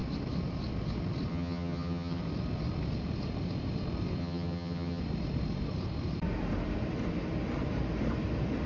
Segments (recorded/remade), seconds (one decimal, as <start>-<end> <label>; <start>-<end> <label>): 0.0-1.3 recorded; 1.3-2.2 remade; 2.2-4.2 recorded; 4.2-5.0 remade; 5.0-8.7 recorded